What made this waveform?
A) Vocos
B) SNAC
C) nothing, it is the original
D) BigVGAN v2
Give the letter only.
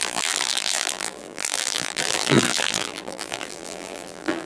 D